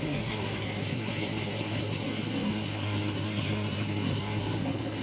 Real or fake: fake